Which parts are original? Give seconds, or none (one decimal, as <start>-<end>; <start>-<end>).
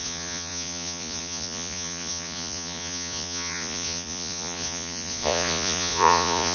none